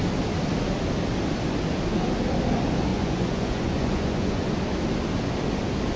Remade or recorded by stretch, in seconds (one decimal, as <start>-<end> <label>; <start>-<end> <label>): 0.0-2.9 recorded; 2.9-4.5 remade; 4.5-6.0 recorded